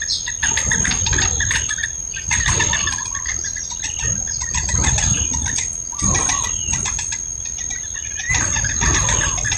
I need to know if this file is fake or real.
real